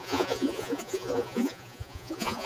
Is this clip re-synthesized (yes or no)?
yes